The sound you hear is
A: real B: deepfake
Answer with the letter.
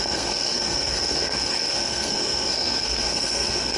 B